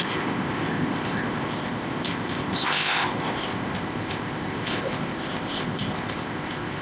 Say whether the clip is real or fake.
fake